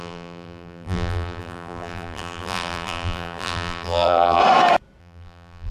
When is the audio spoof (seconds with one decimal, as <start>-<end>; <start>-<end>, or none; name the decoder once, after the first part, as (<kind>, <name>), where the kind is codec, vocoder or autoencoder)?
0.0-4.4 (vocoder, BigVGAN v2); 5.0-5.7

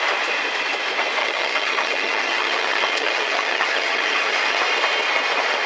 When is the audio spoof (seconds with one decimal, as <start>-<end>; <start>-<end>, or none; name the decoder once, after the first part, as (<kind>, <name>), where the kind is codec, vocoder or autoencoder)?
1.2-4.6 (vocoder, HiFi-GAN)

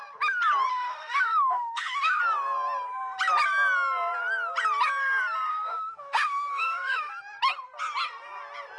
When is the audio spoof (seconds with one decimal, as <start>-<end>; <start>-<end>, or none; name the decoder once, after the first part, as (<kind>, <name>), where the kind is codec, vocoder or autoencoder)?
0.7-2.2 (autoencoder, DAC-VAE); 5.5-7.1

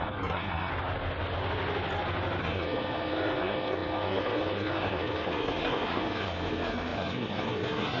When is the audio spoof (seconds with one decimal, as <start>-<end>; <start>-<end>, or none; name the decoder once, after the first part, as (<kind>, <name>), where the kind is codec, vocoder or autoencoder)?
0.0-0.7 (codec, SNAC); 2.4-8.0

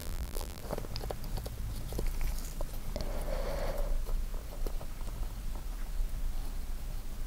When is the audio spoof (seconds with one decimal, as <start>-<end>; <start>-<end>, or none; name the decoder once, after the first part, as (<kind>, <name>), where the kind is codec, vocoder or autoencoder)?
0.0-0.6 (vocoder, BigVGAN v2)

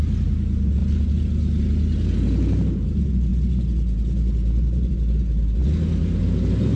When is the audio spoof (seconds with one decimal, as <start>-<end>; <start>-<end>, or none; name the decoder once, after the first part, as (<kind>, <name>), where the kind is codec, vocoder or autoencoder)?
none